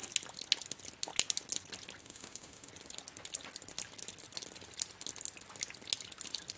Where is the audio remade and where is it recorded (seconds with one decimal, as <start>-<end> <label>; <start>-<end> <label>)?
0.0-2.0 recorded; 2.0-2.7 remade; 2.7-6.6 recorded